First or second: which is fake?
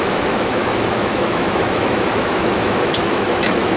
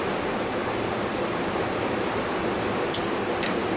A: first